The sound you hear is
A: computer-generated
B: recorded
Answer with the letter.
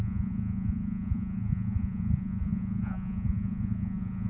A